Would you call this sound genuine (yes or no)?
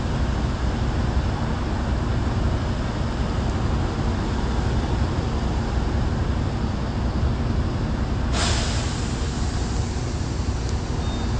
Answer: yes